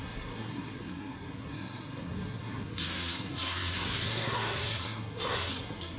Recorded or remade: remade